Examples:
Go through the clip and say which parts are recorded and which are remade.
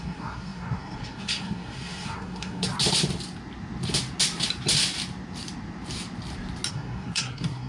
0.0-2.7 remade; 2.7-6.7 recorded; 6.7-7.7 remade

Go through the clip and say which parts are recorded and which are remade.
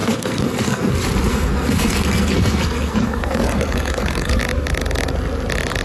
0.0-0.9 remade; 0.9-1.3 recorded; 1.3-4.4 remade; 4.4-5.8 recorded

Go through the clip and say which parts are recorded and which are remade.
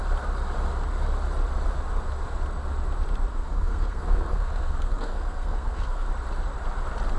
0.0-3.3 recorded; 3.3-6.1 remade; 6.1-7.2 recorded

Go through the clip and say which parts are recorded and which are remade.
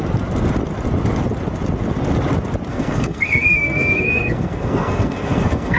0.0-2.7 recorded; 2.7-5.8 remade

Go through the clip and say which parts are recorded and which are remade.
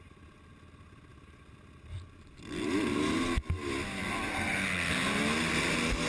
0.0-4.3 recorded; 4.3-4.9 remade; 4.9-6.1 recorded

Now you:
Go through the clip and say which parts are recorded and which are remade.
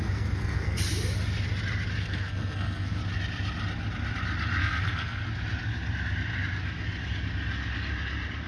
0.0-0.8 remade; 0.8-2.0 recorded; 2.0-3.0 remade; 3.0-4.6 recorded; 4.6-5.2 remade; 5.2-8.5 recorded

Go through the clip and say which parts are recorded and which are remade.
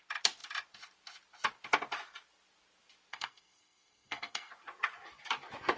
0.0-3.1 recorded; 3.1-4.5 remade; 4.5-5.8 recorded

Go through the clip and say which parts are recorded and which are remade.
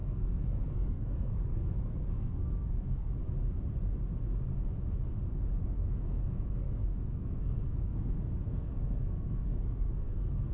0.0-3.1 remade; 3.1-5.6 recorded; 5.6-10.5 remade